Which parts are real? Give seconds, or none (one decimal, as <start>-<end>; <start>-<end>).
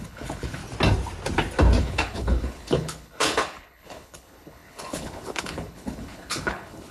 0.6-1.8